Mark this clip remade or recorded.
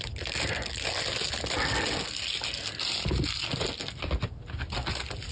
recorded